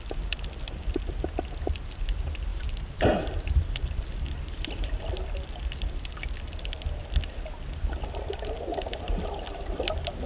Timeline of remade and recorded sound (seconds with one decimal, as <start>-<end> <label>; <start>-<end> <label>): 0.0-2.5 recorded; 2.5-5.1 remade; 5.1-10.3 recorded